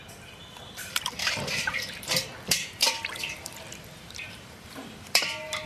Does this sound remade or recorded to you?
remade